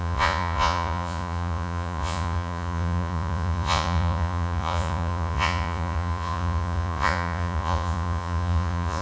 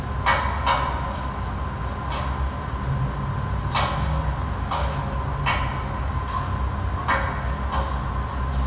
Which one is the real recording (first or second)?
second